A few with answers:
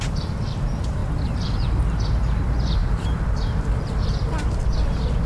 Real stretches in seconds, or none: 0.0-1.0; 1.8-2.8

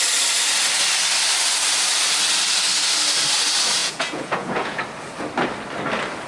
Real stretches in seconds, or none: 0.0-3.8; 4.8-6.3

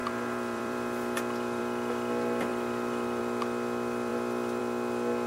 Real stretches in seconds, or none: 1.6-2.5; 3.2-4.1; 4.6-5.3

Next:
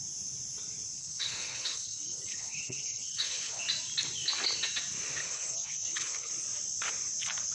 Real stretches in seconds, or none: 0.0-1.0; 3.6-5.2; 6.3-7.5